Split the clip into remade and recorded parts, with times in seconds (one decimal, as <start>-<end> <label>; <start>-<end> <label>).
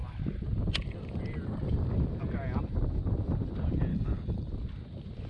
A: 0.0-3.9 recorded; 3.9-4.5 remade; 4.5-5.3 recorded